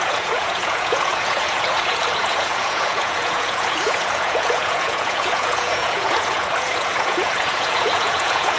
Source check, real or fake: fake